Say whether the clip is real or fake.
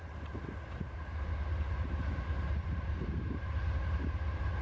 fake